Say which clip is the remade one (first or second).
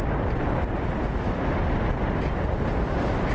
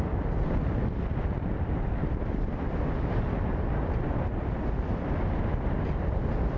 second